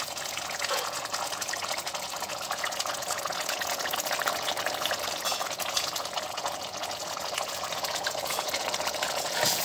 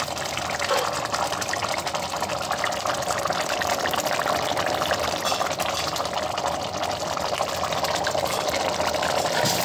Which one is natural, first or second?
second